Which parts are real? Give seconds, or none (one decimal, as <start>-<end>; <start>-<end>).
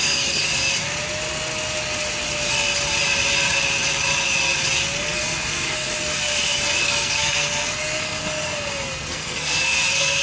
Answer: 0.5-5.0